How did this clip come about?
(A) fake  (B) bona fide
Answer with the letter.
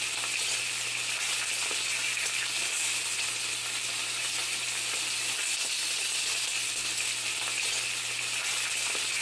B